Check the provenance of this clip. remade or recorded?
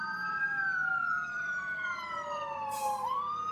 remade